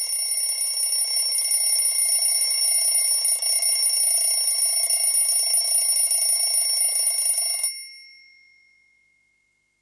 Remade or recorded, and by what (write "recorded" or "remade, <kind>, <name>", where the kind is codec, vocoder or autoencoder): recorded